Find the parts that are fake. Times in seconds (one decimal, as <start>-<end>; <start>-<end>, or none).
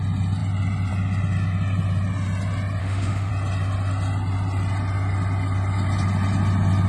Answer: 2.8-3.3